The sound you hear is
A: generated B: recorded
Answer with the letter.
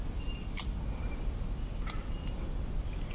B